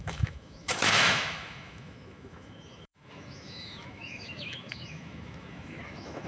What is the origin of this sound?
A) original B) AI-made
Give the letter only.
B